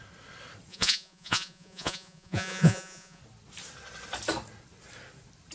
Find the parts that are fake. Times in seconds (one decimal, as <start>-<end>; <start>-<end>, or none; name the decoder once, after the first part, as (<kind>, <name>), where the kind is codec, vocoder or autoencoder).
0.7-3.2 (vocoder, Vocos)